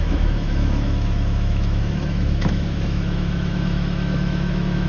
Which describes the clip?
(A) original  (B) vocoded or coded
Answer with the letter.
B